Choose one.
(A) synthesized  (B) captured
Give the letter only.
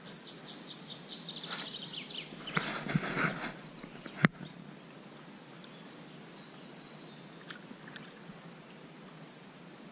B